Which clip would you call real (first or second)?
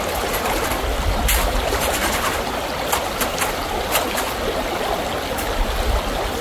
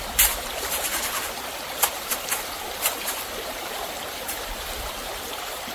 first